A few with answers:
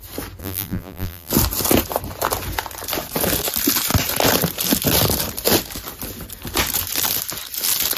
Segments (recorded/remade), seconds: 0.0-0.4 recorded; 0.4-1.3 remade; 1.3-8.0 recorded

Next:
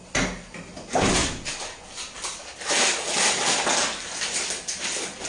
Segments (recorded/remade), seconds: 0.0-5.3 recorded

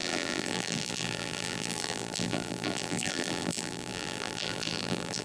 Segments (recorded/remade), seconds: 0.0-5.2 remade